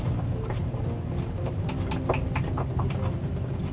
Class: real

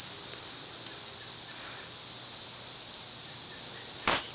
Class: real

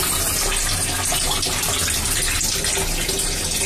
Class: real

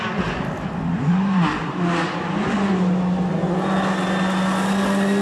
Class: real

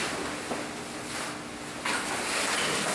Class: real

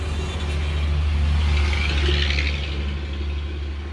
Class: real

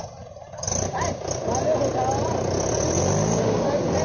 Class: real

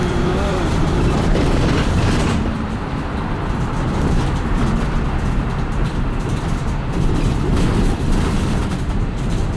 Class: fake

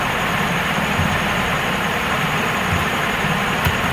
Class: real